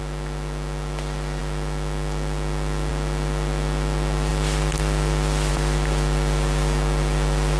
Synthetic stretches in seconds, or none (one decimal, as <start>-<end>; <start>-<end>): none